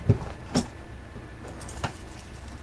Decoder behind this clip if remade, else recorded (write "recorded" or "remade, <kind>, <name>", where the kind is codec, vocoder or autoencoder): recorded